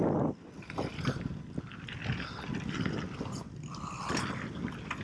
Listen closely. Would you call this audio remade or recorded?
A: recorded